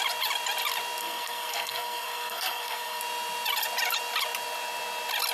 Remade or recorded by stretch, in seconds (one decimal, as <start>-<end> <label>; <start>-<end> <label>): 0.0-1.0 recorded; 1.0-3.0 remade; 3.0-5.3 recorded